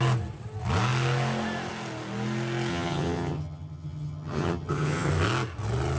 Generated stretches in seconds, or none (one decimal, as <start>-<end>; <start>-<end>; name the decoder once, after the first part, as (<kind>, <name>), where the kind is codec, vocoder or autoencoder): 2.7-5.1 (vocoder, HiFi-GAN)